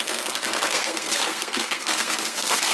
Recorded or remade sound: remade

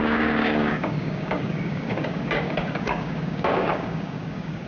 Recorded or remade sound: remade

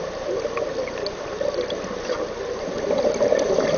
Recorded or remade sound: recorded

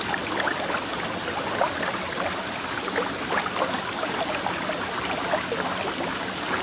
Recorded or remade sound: recorded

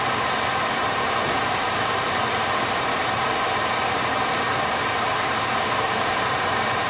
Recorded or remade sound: remade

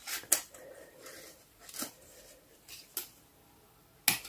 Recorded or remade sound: recorded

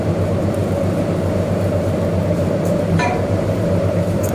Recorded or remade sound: remade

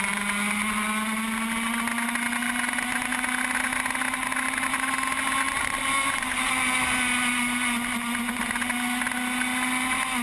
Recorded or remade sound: recorded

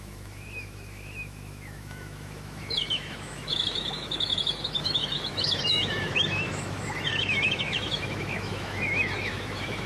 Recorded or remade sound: remade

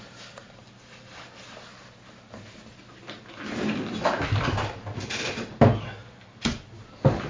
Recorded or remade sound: recorded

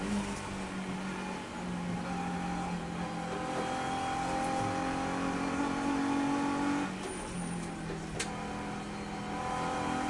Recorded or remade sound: recorded